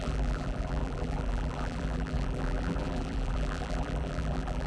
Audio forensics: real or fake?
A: fake